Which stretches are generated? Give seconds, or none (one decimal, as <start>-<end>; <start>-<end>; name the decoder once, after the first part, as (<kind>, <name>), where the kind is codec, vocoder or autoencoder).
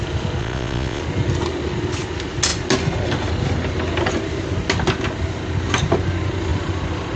0.4-1.0 (vocoder, Vocos)